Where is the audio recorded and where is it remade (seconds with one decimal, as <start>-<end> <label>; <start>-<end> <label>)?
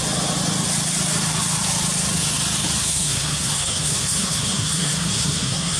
0.0-2.8 recorded; 2.8-5.8 remade